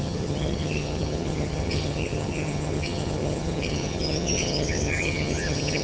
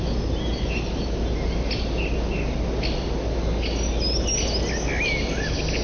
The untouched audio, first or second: second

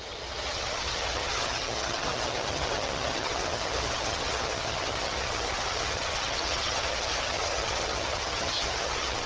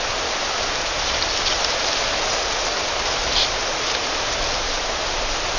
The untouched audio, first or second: second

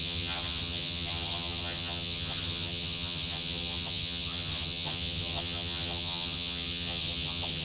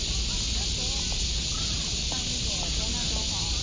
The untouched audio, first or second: second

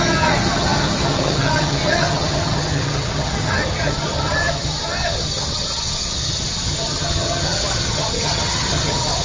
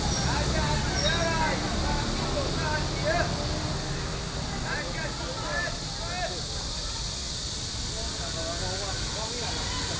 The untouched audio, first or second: second